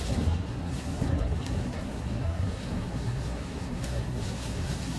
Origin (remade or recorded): remade